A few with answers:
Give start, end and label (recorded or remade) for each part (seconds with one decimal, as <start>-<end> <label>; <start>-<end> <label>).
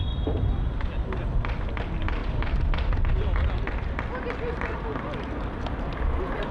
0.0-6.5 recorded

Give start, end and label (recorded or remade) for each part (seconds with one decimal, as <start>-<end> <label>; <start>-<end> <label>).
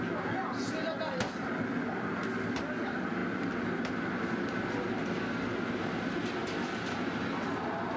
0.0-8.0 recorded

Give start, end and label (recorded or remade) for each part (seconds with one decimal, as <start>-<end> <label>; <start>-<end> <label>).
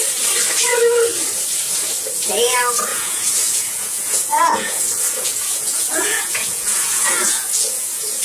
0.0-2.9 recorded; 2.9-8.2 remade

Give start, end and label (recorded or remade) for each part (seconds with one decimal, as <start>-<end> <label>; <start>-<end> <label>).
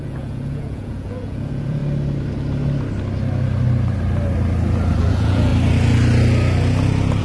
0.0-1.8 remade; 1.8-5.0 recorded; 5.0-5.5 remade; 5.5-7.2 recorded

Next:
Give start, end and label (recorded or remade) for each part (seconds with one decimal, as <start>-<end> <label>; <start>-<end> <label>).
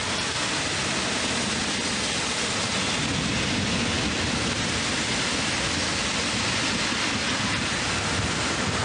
0.0-8.8 recorded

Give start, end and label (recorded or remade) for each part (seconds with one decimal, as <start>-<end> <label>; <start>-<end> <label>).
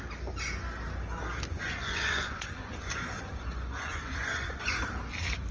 0.0-1.5 recorded; 1.5-4.8 remade; 4.8-5.5 recorded